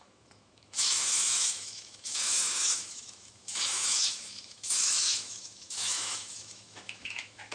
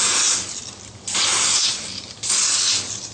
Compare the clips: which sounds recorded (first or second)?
second